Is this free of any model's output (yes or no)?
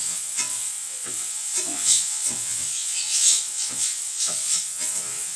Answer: no